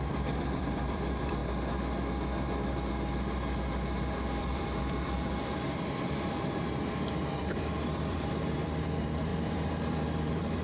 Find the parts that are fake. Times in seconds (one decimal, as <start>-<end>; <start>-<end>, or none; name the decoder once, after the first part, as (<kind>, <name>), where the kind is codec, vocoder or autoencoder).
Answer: 0.0-1.4 (vocoder, BigVGAN v2); 4.4-10.6